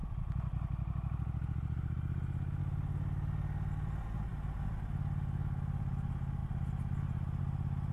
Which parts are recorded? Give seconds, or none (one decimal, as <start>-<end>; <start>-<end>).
0.0-7.9

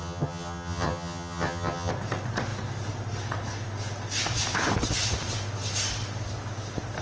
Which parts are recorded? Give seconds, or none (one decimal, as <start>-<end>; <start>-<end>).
1.9-7.0